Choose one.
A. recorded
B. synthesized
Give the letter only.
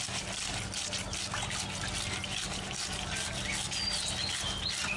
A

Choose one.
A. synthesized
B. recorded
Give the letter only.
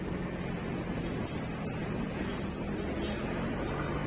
B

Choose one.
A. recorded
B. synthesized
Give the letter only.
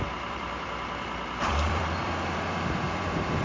B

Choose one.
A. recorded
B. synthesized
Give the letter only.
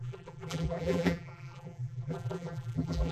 B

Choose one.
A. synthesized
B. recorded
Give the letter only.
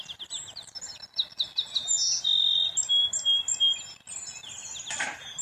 B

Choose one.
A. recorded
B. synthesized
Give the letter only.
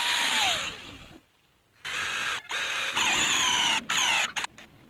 B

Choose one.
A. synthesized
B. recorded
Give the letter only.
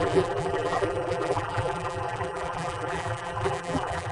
A